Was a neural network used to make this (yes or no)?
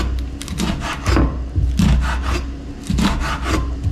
no